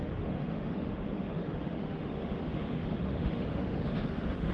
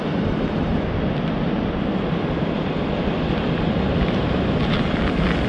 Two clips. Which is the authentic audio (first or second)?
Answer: second